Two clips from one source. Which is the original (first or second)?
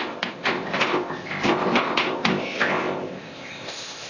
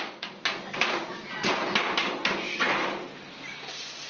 second